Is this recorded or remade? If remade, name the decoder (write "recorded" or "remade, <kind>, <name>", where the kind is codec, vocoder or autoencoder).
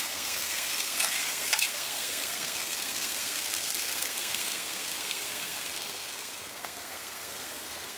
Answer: remade, codec, SNAC